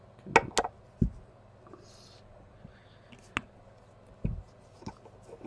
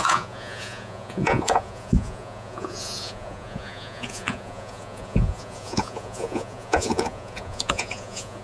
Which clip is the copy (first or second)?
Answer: second